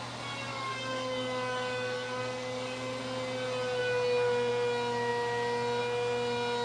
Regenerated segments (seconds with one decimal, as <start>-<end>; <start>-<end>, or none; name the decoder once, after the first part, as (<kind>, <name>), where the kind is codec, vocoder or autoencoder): 0.5-3.0 (codec, DAC)